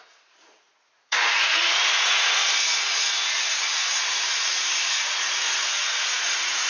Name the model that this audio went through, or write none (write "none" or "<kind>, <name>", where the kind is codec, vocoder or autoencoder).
vocoder, Vocos